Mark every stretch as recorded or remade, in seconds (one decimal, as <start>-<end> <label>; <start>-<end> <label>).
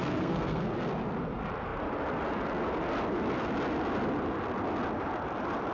0.0-0.6 remade; 0.6-5.7 recorded